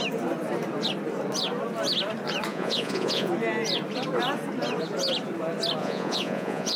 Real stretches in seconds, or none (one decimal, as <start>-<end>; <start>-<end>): 0.0-2.5; 3.3-5.8